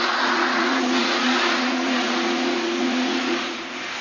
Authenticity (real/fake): fake